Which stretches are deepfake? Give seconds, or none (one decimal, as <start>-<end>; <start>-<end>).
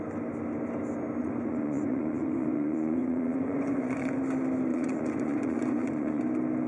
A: 1.2-4.2; 4.7-6.2